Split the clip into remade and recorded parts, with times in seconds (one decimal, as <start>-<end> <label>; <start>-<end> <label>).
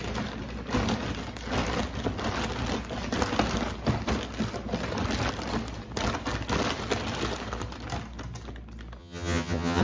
0.0-9.0 recorded; 9.0-9.8 remade